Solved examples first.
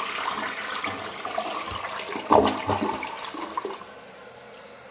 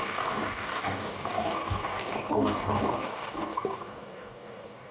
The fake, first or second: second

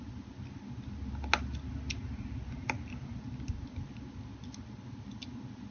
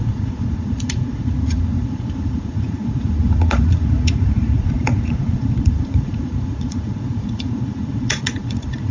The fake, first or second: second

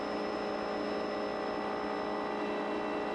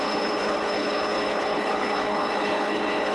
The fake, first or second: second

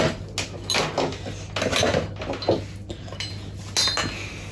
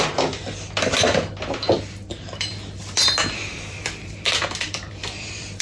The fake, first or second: second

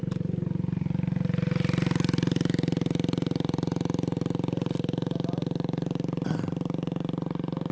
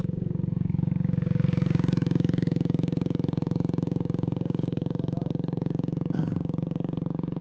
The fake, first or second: second